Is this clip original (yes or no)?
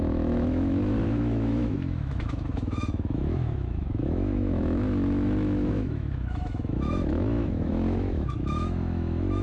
no